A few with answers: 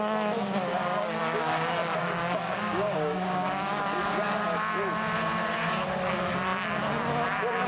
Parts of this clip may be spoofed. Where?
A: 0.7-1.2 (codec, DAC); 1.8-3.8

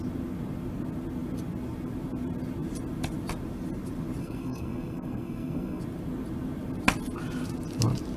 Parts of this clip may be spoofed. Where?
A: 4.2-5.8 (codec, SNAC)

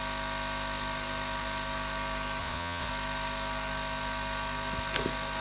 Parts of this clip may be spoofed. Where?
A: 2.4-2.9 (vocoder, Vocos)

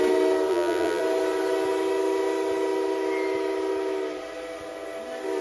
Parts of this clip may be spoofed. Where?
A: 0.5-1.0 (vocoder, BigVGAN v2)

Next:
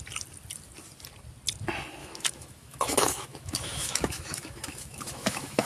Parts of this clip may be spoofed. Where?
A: 2.0-5.7 (autoencoder, DAC-VAE)

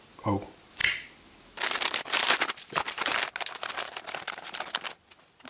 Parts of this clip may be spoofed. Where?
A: none